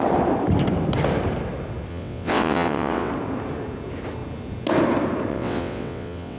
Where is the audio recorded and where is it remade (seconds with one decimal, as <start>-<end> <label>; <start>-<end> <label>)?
0.0-1.9 recorded; 1.9-3.1 remade; 3.1-5.3 recorded; 5.3-6.4 remade